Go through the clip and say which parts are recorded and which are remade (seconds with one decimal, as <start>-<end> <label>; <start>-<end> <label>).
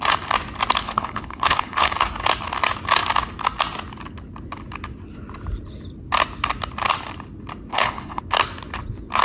0.0-0.8 recorded; 0.8-1.9 remade; 1.9-7.7 recorded; 7.7-8.2 remade; 8.2-9.2 recorded